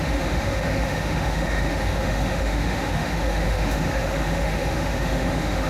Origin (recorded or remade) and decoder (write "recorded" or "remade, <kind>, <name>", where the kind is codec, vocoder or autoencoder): remade, autoencoder, DAC-VAE